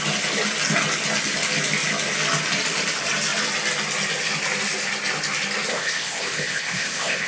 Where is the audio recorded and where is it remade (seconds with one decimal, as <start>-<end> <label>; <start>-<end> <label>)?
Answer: 0.0-5.7 recorded; 5.7-7.3 remade